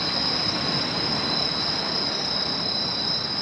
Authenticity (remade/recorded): recorded